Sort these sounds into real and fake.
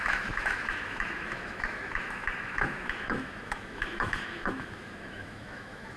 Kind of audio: fake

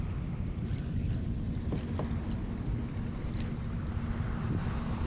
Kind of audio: real